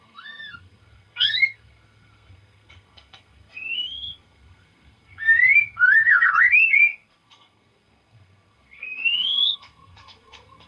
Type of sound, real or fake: fake